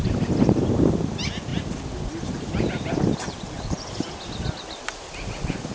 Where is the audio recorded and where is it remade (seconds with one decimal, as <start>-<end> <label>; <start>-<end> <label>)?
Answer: 0.0-5.7 recorded